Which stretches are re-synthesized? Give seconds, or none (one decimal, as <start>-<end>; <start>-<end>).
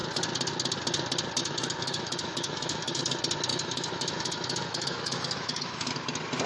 1.4-3.0; 3.5-5.9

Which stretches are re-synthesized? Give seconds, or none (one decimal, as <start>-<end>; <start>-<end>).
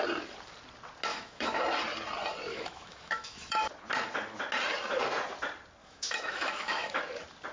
1.1-1.6; 2.5-3.7; 5.8-7.0